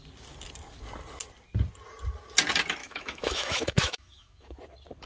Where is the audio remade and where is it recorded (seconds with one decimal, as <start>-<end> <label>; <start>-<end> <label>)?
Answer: 0.0-2.8 recorded; 2.8-4.6 remade; 4.6-5.1 recorded